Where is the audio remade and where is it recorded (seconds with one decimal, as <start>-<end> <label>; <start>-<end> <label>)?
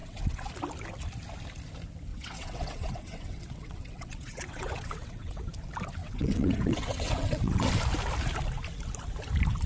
0.0-0.5 remade; 0.5-2.1 recorded; 2.1-5.5 remade; 5.5-6.0 recorded; 6.0-7.7 remade; 7.7-9.7 recorded